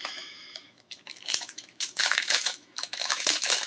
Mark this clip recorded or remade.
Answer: remade